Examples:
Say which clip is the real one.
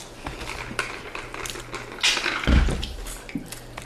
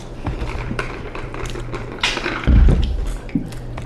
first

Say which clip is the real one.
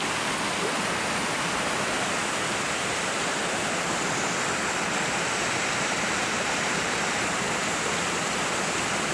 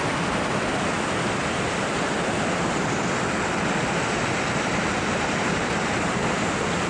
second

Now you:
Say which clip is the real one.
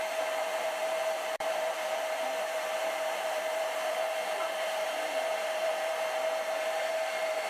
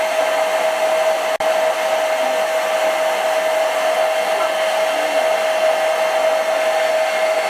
second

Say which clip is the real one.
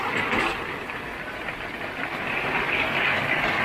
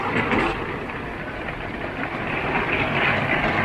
first